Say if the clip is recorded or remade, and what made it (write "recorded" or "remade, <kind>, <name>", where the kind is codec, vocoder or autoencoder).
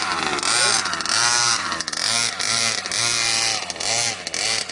recorded